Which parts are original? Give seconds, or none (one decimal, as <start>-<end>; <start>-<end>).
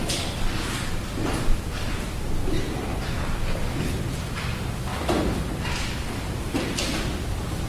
0.0-7.7